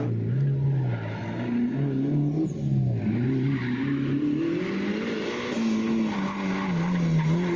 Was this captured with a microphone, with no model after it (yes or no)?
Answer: yes